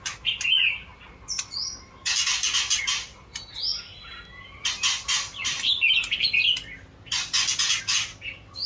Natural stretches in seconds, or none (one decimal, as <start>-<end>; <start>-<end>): 0.0-8.7